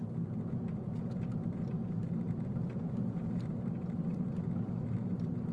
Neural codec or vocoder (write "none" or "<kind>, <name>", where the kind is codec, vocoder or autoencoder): none